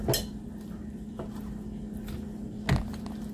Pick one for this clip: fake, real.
real